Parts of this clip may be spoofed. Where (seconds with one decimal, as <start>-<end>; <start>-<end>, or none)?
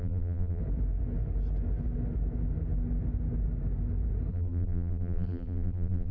0.0-0.6; 4.3-6.1